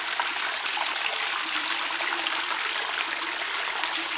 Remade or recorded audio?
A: recorded